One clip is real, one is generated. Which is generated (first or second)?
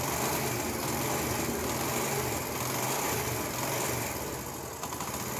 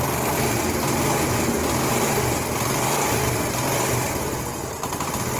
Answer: second